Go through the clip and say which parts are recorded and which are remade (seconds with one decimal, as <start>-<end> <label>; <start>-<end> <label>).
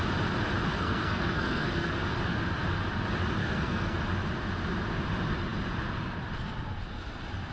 0.0-0.7 recorded; 0.7-1.9 remade; 1.9-3.4 recorded; 3.4-4.0 remade; 4.0-7.5 recorded